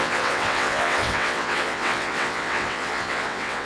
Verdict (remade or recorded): remade